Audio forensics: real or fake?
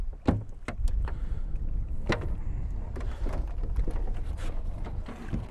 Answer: real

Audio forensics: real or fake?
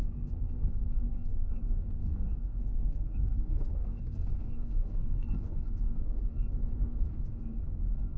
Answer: fake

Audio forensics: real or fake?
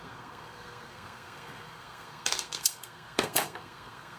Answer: fake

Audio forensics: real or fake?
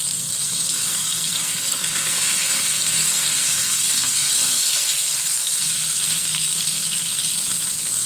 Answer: fake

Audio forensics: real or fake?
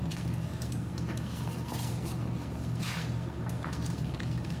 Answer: fake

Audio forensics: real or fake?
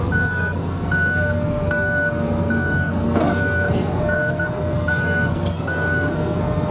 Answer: fake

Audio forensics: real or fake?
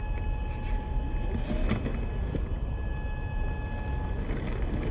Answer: real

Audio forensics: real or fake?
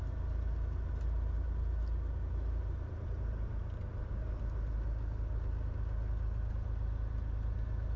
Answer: real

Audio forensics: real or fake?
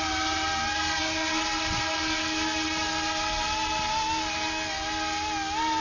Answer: real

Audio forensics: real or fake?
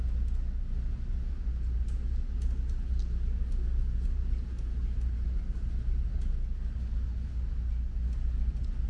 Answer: real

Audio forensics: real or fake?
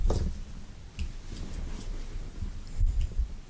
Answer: real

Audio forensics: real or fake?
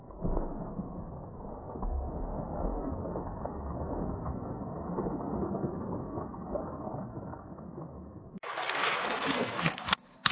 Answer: fake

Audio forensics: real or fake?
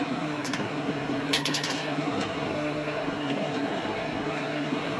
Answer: fake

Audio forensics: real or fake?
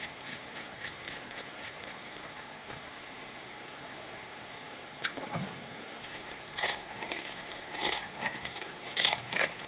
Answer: fake